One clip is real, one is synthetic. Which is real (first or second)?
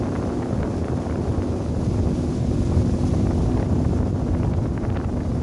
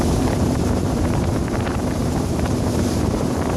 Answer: first